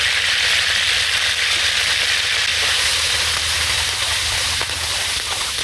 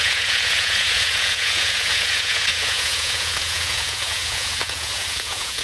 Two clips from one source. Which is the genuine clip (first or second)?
first